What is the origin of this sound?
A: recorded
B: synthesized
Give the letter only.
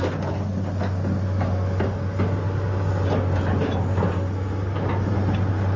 A